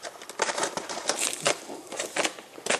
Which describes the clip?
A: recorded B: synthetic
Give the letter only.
A